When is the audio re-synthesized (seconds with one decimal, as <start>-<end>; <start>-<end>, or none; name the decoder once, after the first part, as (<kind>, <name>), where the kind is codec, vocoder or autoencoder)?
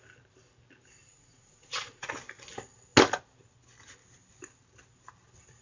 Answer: 1.0-2.1 (vocoder, Vocos)